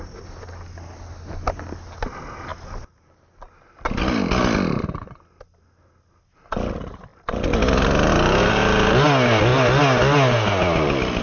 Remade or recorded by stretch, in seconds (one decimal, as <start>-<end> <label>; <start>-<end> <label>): 0.0-11.2 recorded